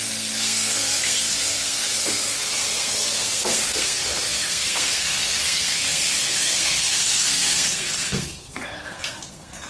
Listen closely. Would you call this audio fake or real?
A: fake